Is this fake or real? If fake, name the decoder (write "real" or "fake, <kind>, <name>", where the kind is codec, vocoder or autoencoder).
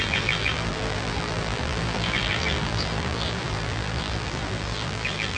fake, vocoder, BigVGAN v2